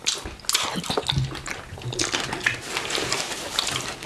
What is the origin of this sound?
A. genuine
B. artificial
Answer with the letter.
A